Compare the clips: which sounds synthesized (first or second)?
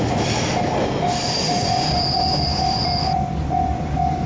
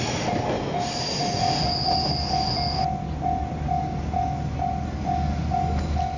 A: first